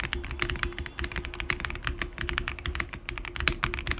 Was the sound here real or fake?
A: real